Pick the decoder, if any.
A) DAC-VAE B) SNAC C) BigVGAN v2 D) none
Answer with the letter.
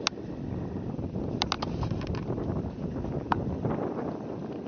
D